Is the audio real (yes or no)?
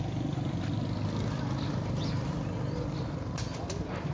yes